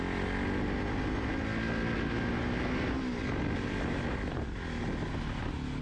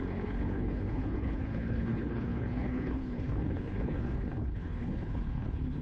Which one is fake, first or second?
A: second